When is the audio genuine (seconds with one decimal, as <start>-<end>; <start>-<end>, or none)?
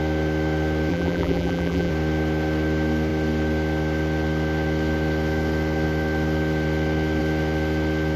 0.0-0.9; 1.9-8.2